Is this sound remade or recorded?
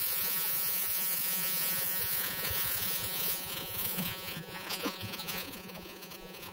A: remade